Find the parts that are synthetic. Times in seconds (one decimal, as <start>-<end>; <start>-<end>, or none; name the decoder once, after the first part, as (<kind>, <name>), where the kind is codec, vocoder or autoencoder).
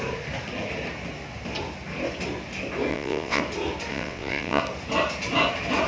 2.9-3.4 (vocoder, WaveNeXt); 3.9-4.6